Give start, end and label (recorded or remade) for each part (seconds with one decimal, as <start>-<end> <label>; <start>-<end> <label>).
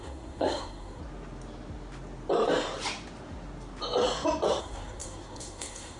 0.0-1.0 remade; 1.0-4.6 recorded; 4.6-6.0 remade